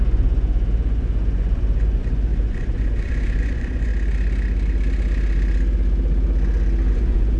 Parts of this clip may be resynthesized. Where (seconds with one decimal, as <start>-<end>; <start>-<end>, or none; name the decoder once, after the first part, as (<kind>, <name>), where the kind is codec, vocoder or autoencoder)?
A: 0.0-3.9 (vocoder, Vocos); 6.9-7.4